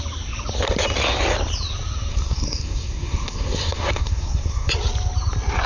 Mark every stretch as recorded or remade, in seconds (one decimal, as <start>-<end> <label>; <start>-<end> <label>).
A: 0.0-2.1 recorded; 2.1-4.7 remade; 4.7-5.7 recorded